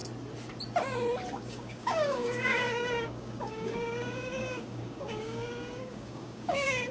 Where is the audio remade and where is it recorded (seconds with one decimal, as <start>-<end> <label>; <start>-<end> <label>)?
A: 0.0-1.3 recorded; 1.3-6.9 remade